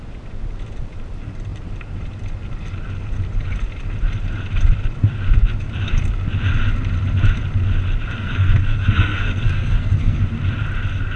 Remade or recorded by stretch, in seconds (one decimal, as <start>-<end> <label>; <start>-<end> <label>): 0.0-8.2 recorded; 8.2-10.2 remade; 10.2-11.2 recorded